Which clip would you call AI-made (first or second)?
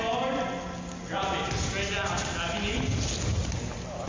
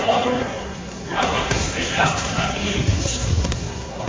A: second